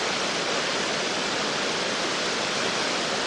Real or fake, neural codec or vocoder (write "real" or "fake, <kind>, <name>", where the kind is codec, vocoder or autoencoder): real